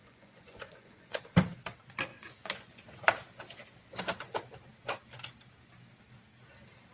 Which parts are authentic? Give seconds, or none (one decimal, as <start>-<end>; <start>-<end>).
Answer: 1.2-2.1; 2.8-6.9